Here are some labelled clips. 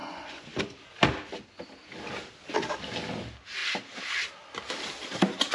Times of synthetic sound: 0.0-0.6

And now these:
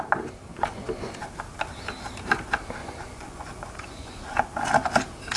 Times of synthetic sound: 0.5-1.1; 2.8-4.4

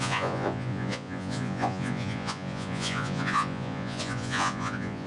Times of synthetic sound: 0.0-5.1

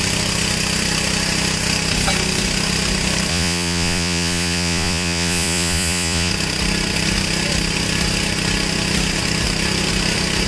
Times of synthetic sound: 3.3-6.3

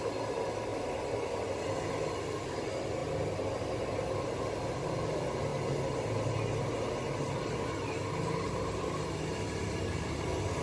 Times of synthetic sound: none

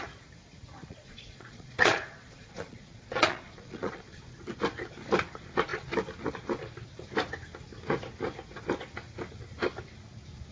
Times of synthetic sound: 0.9-4.2